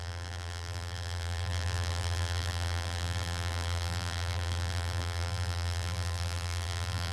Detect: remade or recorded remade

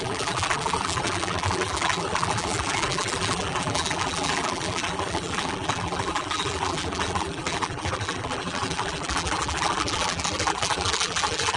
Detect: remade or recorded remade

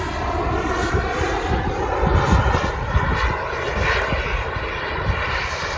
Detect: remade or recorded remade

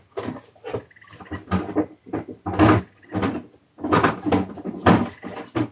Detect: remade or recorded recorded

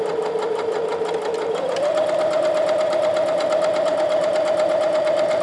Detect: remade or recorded recorded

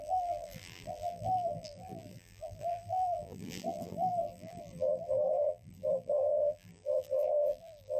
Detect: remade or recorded remade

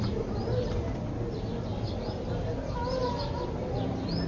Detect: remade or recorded recorded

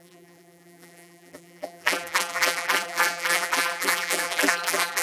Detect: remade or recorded remade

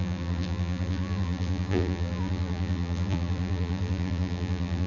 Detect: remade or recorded remade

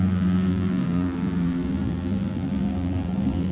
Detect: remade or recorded remade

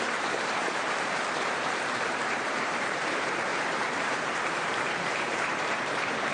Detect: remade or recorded remade